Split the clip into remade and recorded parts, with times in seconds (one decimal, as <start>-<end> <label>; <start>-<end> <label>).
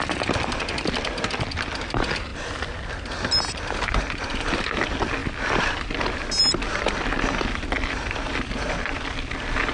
0.0-9.7 recorded